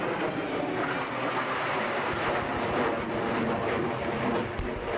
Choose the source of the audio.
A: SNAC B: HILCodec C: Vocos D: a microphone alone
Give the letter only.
D